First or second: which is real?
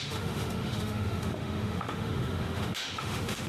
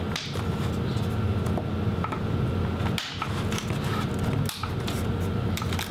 second